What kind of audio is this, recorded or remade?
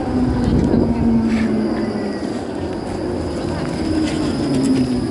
recorded